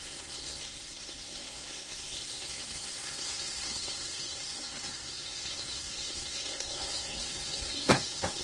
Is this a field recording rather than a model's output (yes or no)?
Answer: no